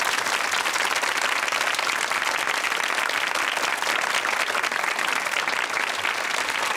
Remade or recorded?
recorded